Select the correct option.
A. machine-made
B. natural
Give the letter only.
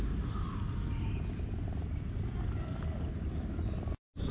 B